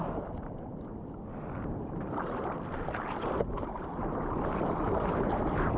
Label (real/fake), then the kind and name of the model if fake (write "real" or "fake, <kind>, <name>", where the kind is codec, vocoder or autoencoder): real